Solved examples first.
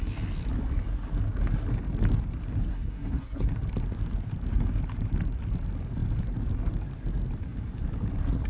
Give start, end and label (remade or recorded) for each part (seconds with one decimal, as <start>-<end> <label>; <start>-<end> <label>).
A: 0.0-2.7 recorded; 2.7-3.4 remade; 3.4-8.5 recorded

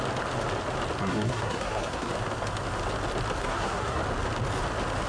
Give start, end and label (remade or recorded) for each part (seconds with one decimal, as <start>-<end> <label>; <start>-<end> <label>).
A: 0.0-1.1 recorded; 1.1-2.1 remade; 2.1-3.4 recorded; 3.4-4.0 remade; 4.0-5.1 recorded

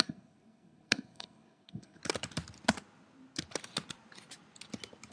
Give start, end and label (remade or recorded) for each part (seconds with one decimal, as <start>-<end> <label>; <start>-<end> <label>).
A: 0.0-2.0 remade; 2.0-5.1 recorded